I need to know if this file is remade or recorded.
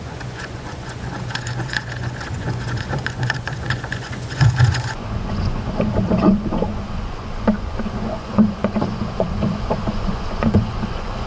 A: remade